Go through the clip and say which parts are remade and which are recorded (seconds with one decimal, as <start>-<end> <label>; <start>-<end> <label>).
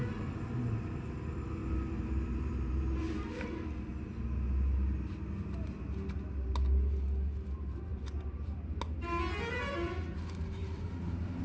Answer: 0.0-1.6 recorded; 1.6-3.7 remade; 3.7-7.9 recorded; 7.9-8.8 remade; 8.8-10.6 recorded; 10.6-11.4 remade